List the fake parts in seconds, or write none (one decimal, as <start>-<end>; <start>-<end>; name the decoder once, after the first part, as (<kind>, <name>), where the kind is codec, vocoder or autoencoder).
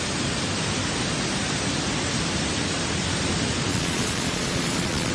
3.7-5.1 (vocoder, Vocos)